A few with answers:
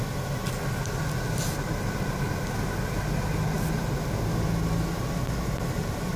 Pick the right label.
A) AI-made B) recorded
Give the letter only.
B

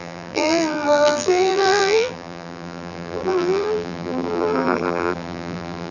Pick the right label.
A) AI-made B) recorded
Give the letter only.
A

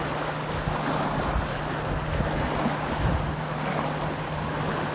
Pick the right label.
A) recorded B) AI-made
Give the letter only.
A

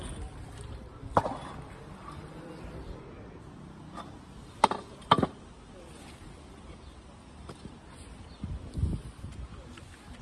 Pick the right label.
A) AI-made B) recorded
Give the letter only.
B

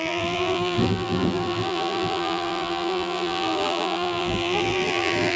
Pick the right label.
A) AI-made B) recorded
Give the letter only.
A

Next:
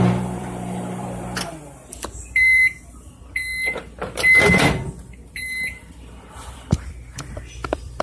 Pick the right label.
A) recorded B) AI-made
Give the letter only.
B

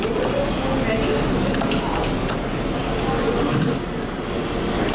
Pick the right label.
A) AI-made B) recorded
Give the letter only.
B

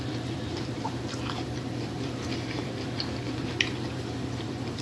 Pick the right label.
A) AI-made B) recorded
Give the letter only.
A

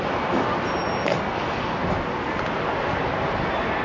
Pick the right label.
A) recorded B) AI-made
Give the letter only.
A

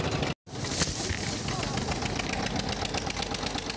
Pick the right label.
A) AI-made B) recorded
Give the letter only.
B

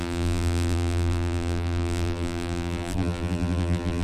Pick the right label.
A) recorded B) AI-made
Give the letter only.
B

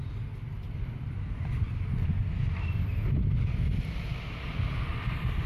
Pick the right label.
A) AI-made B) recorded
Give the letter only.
B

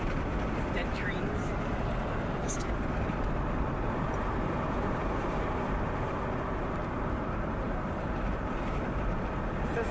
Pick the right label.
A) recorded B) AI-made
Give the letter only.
B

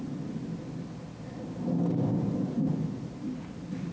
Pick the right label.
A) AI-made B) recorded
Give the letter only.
B